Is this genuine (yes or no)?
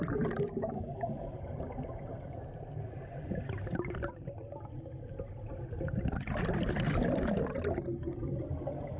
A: yes